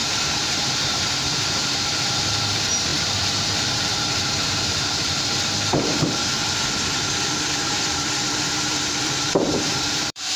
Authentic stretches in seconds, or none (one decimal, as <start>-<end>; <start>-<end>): 6.2-7.3